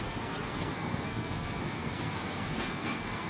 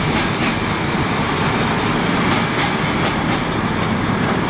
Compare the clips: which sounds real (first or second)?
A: second